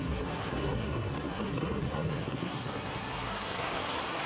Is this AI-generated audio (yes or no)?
yes